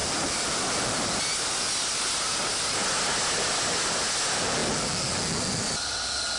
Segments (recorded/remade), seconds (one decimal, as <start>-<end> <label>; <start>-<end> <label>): 0.0-6.4 recorded

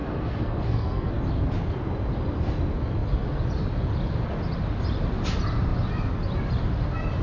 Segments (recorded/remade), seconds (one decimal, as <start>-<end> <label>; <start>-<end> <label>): 0.0-1.1 remade; 1.1-7.2 recorded

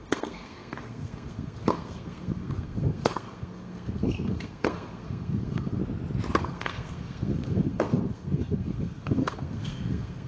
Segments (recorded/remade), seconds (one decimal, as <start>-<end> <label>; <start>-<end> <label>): 0.0-5.8 remade; 5.8-6.4 recorded; 6.4-10.3 remade